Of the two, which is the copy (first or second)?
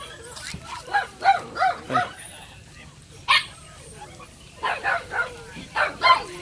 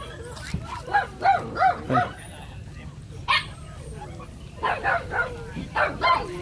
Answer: first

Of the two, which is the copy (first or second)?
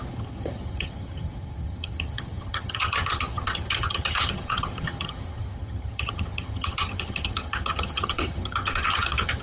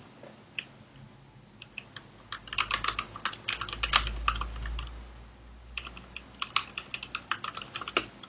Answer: first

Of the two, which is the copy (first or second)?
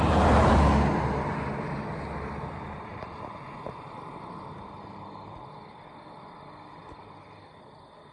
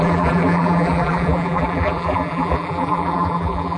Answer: second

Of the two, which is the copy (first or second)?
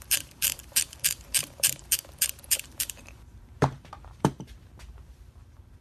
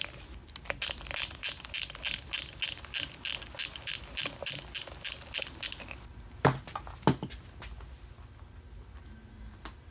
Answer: first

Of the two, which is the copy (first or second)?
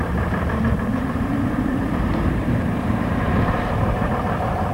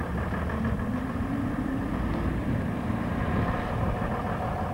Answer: first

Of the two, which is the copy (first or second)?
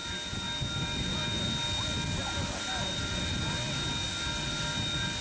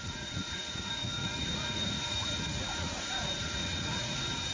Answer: second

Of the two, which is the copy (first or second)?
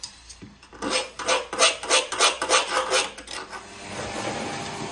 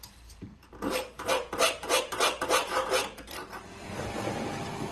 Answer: second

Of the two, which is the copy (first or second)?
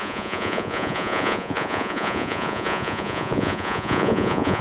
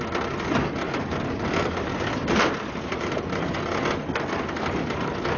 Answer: first